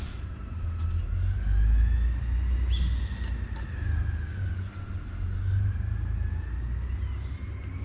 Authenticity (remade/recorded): recorded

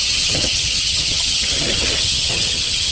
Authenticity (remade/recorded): remade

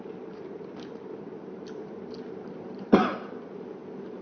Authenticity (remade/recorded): remade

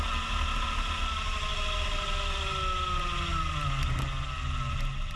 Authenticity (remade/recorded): recorded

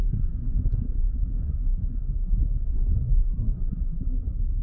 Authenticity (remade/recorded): remade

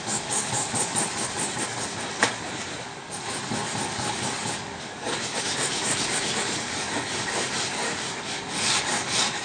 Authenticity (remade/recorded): remade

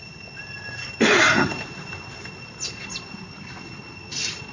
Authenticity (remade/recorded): recorded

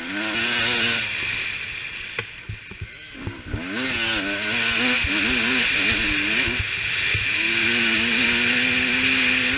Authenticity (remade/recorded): recorded